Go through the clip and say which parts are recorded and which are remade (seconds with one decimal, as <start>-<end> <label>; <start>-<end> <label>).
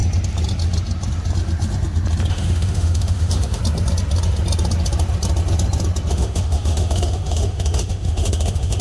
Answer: 0.0-2.3 recorded; 2.3-3.6 remade; 3.6-6.1 recorded; 6.1-8.8 remade